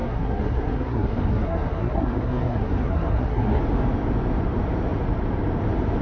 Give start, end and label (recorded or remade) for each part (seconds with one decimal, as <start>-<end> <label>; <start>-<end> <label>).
0.0-3.6 remade; 3.6-6.0 recorded